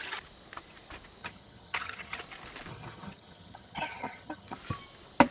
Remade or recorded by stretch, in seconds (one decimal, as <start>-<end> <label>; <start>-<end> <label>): 0.0-1.2 recorded; 1.2-2.2 remade; 2.2-2.7 recorded; 2.7-4.6 remade; 4.6-5.3 recorded